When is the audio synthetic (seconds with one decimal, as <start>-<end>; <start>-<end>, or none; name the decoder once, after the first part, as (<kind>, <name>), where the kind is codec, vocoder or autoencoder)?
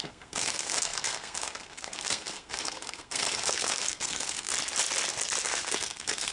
0.0-4.5 (codec, SNAC); 5.4-6.3